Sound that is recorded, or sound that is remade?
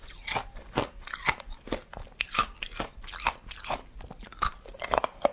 recorded